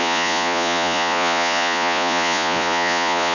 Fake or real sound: fake